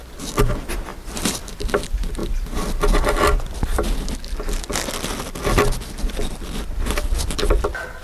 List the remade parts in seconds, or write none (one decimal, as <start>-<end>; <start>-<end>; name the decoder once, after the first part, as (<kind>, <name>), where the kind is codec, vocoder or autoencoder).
none